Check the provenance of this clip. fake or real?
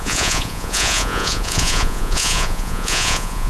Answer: fake